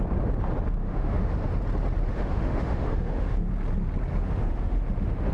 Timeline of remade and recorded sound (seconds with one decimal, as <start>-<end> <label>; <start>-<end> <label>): 0.0-0.8 recorded; 0.8-1.6 remade; 1.6-2.1 recorded; 2.1-3.5 remade; 3.5-4.1 recorded; 4.1-5.3 remade